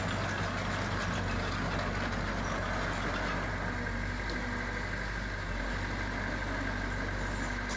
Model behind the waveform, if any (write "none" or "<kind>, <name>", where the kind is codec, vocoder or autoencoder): none